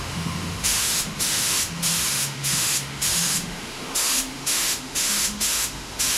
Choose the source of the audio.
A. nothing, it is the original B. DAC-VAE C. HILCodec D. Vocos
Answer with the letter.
B